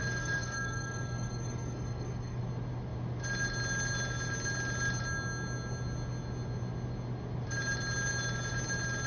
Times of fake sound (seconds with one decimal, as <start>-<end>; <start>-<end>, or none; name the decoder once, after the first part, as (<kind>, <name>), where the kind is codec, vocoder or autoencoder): 0.0-2.4 (codec, DAC)